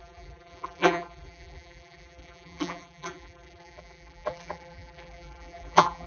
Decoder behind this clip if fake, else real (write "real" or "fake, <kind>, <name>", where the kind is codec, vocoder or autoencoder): fake, vocoder, BigVGAN v2